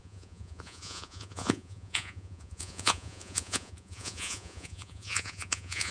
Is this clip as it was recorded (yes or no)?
no